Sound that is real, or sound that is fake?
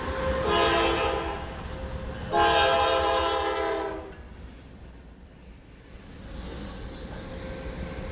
real